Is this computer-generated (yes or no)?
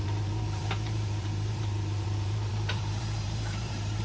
yes